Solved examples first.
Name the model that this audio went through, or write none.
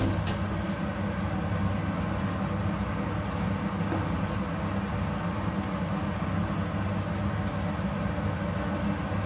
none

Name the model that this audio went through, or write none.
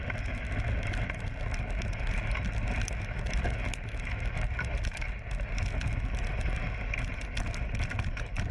none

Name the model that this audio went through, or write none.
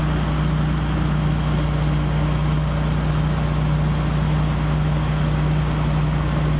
none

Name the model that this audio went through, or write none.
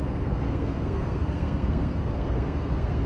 codec, SNAC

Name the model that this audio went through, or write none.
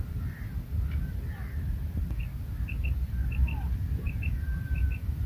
none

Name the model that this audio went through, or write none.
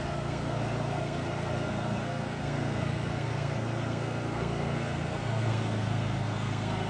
codec, SNAC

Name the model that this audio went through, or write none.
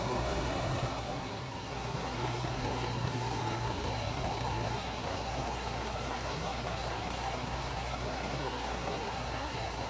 codec, SNAC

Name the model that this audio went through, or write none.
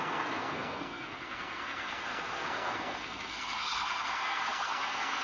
codec, SNAC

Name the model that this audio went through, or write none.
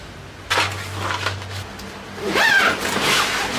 none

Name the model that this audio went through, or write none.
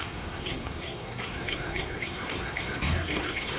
codec, SNAC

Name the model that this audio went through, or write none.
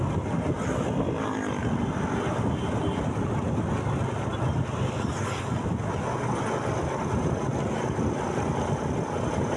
none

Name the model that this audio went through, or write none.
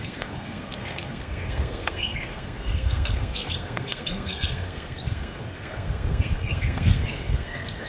codec, SNAC